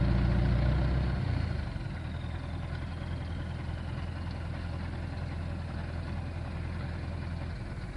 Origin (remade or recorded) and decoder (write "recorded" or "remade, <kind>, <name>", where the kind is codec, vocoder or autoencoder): recorded